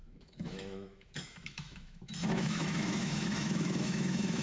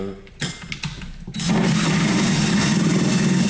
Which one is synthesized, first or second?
first